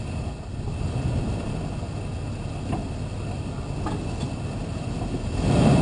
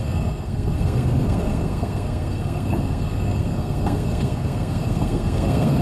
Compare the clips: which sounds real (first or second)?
first